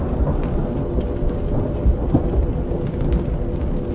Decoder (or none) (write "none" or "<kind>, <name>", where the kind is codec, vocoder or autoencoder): none